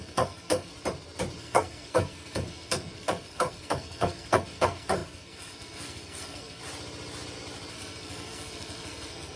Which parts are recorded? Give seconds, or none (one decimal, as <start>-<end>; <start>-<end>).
0.7-1.4; 6.6-7.7